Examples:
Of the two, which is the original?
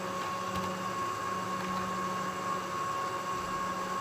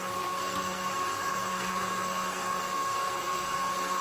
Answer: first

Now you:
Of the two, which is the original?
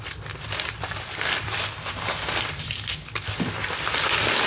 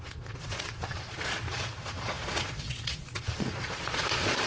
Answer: first